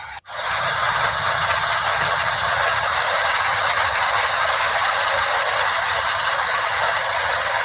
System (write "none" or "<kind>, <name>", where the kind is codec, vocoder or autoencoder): vocoder, HiFi-GAN